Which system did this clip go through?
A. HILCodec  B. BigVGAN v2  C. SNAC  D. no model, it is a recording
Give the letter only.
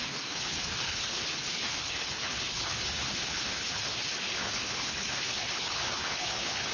A